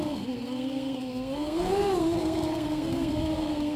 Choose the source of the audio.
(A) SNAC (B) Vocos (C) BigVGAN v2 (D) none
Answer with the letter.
A